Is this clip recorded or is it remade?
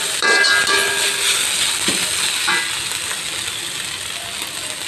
recorded